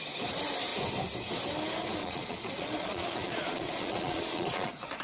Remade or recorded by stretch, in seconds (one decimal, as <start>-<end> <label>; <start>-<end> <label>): 0.0-2.0 recorded; 2.0-5.0 remade